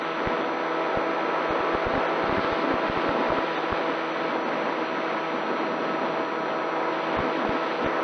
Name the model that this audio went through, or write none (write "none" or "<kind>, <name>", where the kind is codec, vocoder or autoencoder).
none